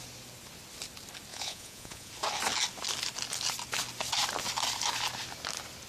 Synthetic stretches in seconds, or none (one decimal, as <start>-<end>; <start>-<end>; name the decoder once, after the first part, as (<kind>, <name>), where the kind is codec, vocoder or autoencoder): 1.3-2.1 (vocoder, Vocos)